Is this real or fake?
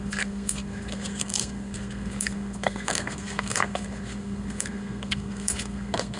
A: fake